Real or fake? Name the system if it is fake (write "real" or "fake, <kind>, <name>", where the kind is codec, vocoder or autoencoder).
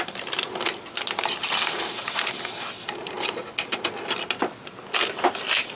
real